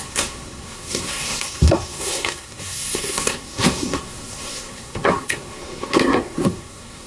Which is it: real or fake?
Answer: fake